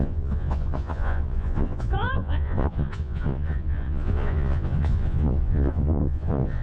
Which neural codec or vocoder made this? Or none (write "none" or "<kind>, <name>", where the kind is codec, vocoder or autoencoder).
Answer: vocoder, Vocos